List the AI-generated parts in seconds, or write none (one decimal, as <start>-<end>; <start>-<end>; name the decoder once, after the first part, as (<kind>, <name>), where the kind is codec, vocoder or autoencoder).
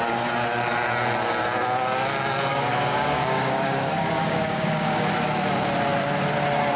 2.5-5.1 (codec, DAC)